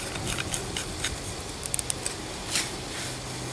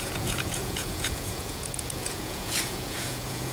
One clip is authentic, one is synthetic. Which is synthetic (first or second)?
second